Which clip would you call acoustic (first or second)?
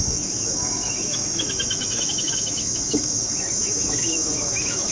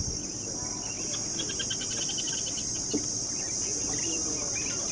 second